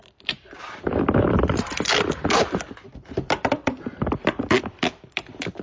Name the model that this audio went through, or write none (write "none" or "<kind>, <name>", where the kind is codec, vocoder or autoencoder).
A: vocoder, BigVGAN v2